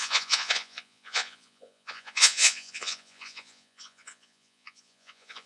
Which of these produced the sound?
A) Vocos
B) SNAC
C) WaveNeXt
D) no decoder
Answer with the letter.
A